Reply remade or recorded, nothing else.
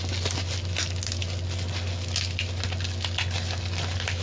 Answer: recorded